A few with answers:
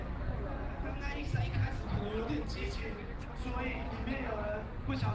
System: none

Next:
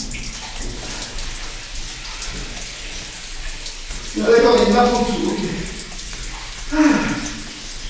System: none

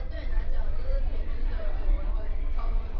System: vocoder, WaveNeXt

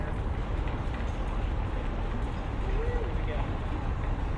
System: none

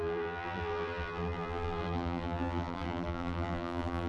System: vocoder, BigVGAN v2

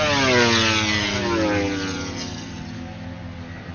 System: none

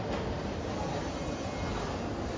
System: none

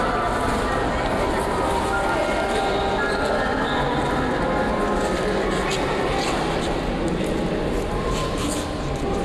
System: none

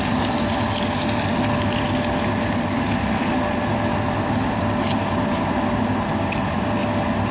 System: none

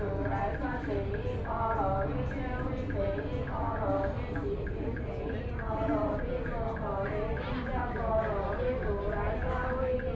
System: none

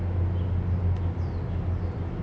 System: none